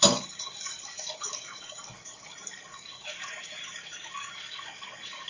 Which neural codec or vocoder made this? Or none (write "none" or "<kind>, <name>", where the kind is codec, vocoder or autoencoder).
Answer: codec, DAC